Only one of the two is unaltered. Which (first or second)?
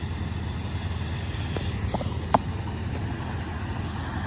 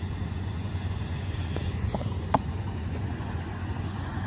first